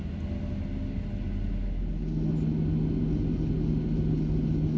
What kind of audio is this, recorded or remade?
recorded